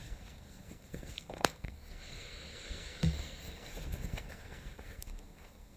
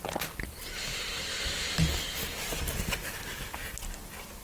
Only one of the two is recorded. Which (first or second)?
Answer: second